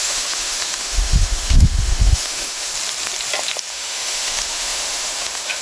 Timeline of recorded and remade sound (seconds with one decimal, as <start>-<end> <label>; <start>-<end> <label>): 0.0-2.7 remade; 2.7-3.7 recorded; 3.7-5.6 remade